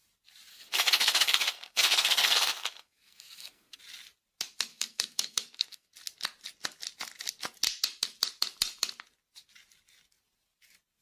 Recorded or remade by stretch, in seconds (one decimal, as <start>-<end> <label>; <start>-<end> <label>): 0.0-0.5 recorded; 0.5-3.8 remade; 3.8-4.7 recorded; 4.7-5.9 remade; 5.9-11.0 recorded